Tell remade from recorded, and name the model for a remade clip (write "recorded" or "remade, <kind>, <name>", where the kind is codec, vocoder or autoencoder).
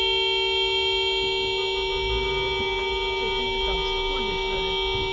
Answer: recorded